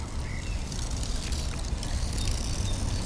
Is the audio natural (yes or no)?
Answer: yes